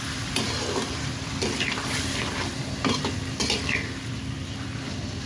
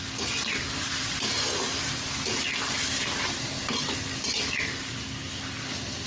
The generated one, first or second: first